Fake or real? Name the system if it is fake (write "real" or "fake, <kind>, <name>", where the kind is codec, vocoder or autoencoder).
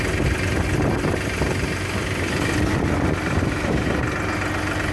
real